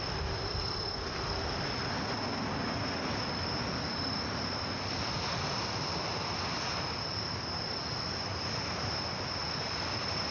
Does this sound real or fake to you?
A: real